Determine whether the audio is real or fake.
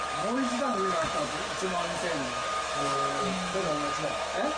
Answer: fake